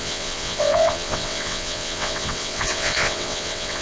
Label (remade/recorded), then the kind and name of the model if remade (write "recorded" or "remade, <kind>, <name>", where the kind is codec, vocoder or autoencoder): remade, vocoder, WaveNeXt